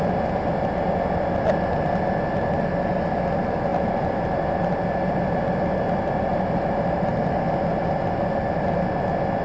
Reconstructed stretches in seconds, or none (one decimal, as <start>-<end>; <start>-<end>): 3.7-5.2; 6.3-7.2